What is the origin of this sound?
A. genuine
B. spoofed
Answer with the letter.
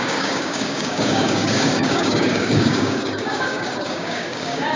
B